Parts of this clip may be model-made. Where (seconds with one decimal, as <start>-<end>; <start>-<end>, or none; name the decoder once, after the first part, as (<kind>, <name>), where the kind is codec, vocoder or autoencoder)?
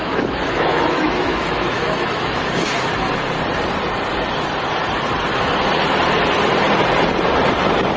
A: 0.0-2.5 (autoencoder, DAC-VAE)